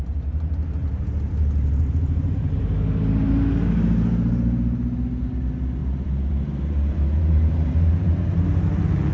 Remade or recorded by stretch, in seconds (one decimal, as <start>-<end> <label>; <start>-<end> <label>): 0.0-0.8 recorded; 0.8-2.6 remade; 2.6-5.8 recorded; 5.8-8.5 remade; 8.5-9.1 recorded